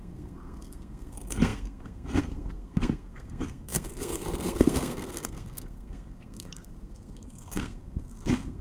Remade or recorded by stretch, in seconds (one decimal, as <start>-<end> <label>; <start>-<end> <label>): 0.0-8.6 remade